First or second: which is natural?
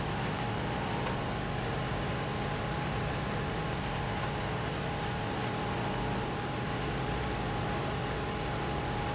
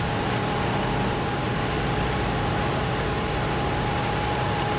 first